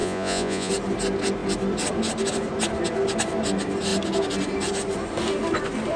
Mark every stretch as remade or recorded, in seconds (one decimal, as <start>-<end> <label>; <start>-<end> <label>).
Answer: 0.0-0.7 remade; 0.7-6.0 recorded